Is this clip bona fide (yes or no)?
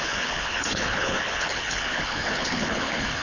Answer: no